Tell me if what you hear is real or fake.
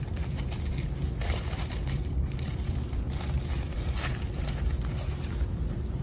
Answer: fake